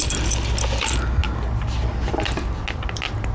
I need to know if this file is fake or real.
real